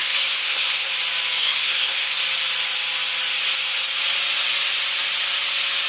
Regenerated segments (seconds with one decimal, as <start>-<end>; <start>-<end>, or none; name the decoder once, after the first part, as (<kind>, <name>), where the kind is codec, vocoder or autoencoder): 0.0-0.9 (codec, SNAC); 1.4-2.2